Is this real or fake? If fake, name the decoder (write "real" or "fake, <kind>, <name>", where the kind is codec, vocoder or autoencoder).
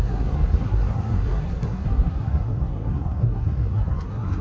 fake, codec, SNAC